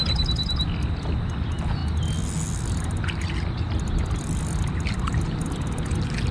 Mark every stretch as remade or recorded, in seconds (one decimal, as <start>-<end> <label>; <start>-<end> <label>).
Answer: 0.0-6.3 recorded